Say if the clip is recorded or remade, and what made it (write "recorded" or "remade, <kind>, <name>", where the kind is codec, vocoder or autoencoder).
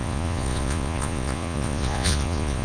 remade, vocoder, Vocos